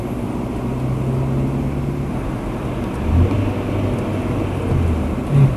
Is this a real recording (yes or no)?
yes